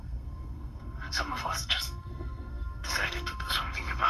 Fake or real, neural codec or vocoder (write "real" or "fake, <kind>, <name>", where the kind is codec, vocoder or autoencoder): fake, codec, SNAC